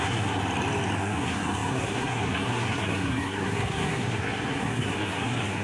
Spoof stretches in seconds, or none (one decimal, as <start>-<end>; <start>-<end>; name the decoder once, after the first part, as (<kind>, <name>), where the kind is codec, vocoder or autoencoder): 0.0-0.4 (codec, SNAC); 1.0-5.6